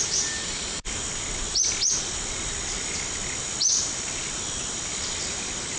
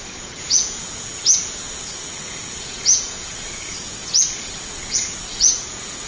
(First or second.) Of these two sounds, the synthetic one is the second